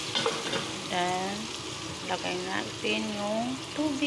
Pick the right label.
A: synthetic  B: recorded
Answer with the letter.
B